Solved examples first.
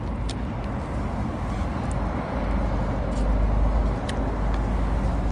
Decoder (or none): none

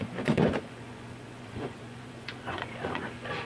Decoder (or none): vocoder, Vocos